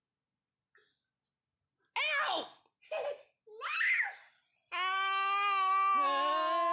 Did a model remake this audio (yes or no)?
no